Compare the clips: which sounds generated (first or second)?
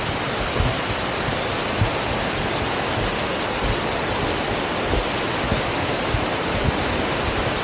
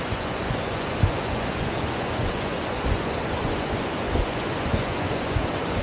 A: second